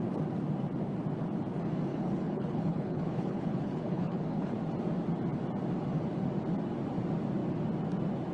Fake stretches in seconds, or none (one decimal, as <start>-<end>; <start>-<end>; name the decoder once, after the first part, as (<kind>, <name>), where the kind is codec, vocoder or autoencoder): 1.9-4.5 (codec, HILCodec)